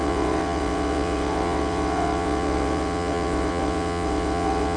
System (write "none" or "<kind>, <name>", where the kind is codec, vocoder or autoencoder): vocoder, WaveNeXt